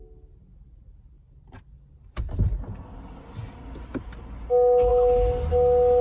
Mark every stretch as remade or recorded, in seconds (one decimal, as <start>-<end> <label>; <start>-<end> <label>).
0.0-6.0 recorded